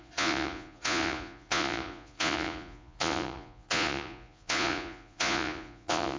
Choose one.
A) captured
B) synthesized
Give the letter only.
B